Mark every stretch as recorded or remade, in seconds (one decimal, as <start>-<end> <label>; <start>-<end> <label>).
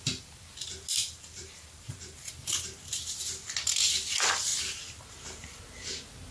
0.0-1.0 recorded; 1.0-2.3 remade; 2.3-6.3 recorded